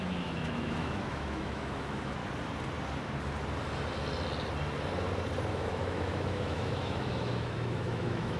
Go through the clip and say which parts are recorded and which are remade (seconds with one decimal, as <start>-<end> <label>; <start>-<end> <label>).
0.0-2.2 remade; 2.2-5.5 recorded; 5.5-8.4 remade